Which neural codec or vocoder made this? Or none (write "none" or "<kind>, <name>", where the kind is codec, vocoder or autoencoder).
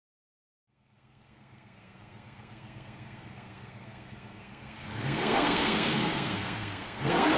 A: codec, SNAC